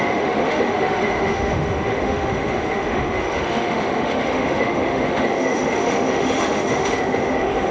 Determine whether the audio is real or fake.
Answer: fake